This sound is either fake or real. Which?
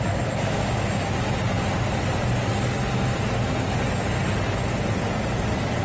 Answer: real